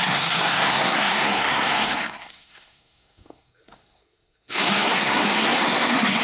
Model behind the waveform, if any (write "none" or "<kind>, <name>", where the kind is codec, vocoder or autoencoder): codec, SNAC